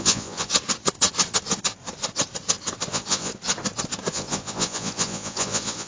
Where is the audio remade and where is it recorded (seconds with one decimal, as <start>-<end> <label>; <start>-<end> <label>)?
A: 0.0-0.5 remade; 0.5-2.9 recorded; 2.9-3.3 remade; 3.3-4.1 recorded; 4.1-5.9 remade